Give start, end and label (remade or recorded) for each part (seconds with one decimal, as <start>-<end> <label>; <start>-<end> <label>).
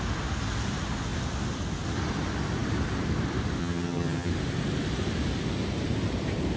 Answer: 0.0-3.6 recorded; 3.6-4.3 remade; 4.3-6.6 recorded